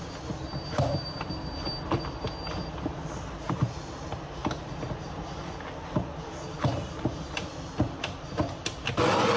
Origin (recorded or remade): recorded